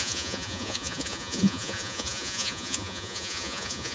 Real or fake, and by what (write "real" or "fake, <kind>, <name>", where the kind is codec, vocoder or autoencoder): fake, vocoder, Vocos